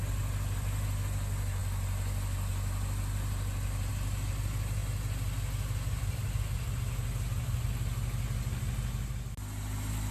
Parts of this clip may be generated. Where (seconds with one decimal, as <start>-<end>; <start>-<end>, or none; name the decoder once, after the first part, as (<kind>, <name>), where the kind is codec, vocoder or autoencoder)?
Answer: none